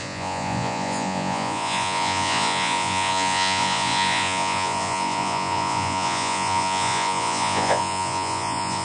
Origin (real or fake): fake